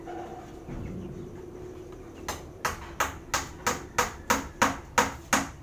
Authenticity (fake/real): real